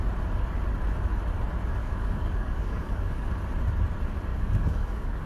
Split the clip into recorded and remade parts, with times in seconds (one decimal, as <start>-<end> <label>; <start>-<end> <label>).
0.0-1.8 recorded; 1.8-3.3 remade; 3.3-4.3 recorded; 4.3-5.3 remade